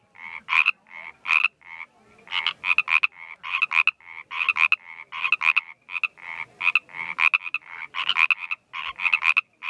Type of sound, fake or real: real